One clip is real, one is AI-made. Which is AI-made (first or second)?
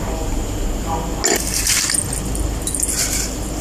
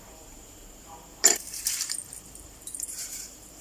second